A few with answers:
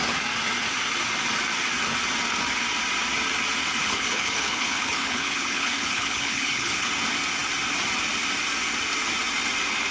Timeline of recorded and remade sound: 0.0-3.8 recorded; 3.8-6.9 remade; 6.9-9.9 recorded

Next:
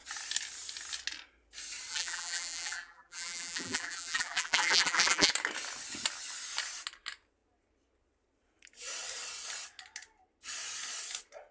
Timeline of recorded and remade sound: 0.0-1.9 recorded; 1.9-5.3 remade; 5.3-11.5 recorded

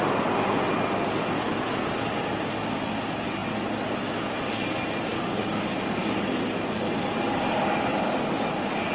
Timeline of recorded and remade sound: 0.0-8.9 recorded

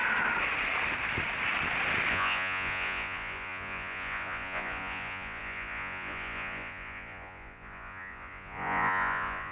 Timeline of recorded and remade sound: 0.0-2.1 recorded; 2.1-9.5 remade